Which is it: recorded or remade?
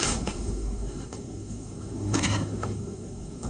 remade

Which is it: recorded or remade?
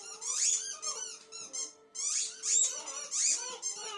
recorded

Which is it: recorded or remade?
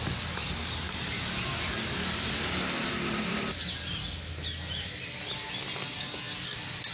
recorded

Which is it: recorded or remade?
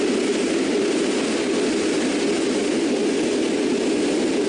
recorded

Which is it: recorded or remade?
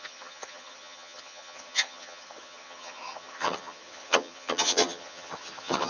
remade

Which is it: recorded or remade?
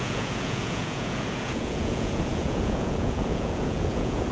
remade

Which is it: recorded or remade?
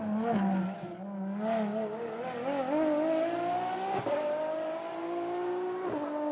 recorded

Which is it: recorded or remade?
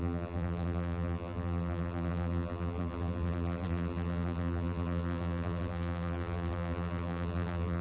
remade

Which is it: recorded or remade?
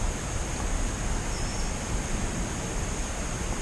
remade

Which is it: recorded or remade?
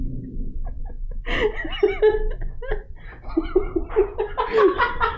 recorded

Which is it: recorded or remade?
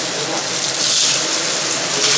recorded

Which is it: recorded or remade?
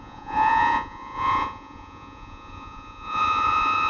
remade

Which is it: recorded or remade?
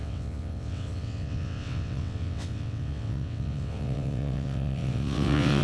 remade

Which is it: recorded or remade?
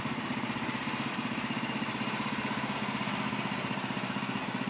remade